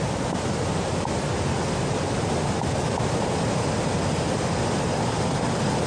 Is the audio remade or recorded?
recorded